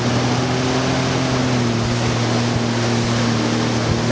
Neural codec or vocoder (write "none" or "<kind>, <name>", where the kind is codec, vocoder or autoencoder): none